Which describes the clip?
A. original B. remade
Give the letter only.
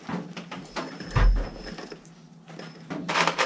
A